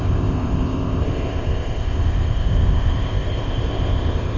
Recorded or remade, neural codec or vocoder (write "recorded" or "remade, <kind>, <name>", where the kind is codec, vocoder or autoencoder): remade, codec, ZipCodec